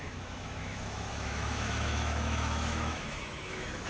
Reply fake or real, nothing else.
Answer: fake